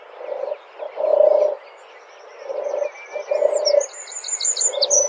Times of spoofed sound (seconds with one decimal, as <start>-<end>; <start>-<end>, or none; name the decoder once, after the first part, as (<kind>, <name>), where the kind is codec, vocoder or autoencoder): none